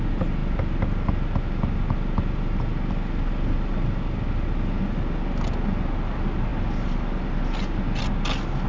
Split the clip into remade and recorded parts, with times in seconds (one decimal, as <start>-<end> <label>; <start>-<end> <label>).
0.0-8.7 recorded